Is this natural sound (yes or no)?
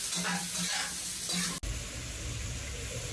yes